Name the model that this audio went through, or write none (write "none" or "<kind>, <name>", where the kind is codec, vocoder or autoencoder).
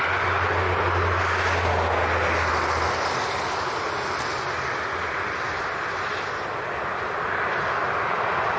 none